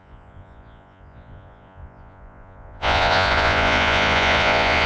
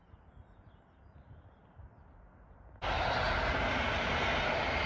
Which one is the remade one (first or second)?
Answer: first